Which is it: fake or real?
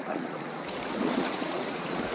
fake